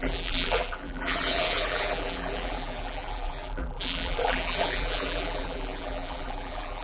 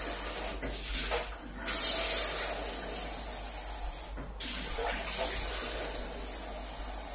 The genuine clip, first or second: second